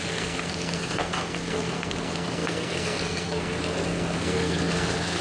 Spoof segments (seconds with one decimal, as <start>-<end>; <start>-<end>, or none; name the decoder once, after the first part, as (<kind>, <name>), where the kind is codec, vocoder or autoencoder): 0.0-5.2 (codec, SNAC)